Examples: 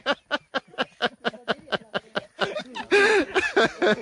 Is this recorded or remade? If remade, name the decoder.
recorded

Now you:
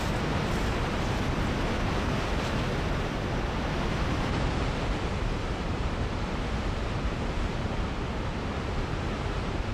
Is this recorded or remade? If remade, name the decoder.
remade, vocoder, BigVGAN v2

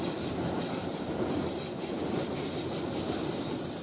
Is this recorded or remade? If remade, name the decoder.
recorded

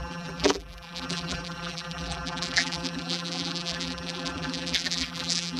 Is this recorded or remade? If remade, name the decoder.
remade, vocoder, BigVGAN v2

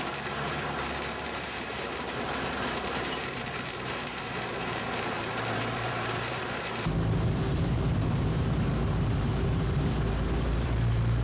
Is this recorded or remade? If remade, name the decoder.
remade, vocoder, BigVGAN v2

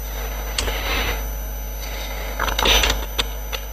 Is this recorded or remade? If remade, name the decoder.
recorded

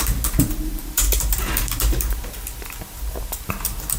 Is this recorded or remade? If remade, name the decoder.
remade, vocoder, BigVGAN v2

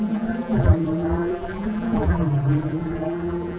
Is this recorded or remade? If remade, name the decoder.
remade, vocoder, BigVGAN v2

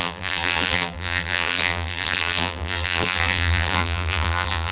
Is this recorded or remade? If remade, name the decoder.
remade, vocoder, BigVGAN v2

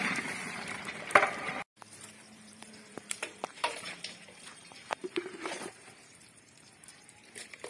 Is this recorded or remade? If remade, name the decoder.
remade, vocoder, BigVGAN v2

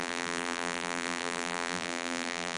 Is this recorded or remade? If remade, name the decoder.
remade, vocoder, BigVGAN v2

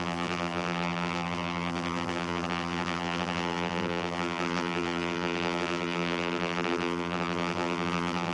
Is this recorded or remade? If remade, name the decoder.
remade, vocoder, BigVGAN v2